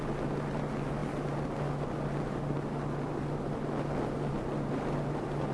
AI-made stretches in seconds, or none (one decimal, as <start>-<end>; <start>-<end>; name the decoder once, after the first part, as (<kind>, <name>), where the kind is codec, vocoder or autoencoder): none

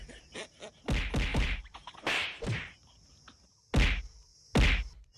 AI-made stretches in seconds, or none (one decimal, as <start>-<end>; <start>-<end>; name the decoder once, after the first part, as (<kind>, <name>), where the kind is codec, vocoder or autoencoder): 1.3-2.4 (vocoder, BigVGAN v2)